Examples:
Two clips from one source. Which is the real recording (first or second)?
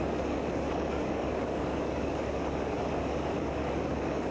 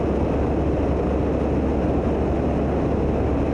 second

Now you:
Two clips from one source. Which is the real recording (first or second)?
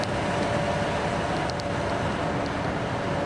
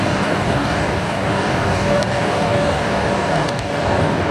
first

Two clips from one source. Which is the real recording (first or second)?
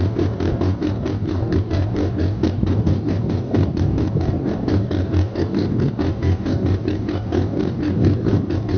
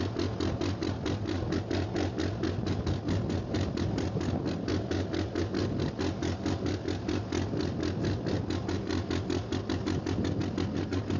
second